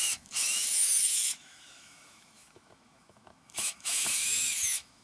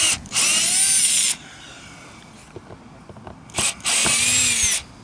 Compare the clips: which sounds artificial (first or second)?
first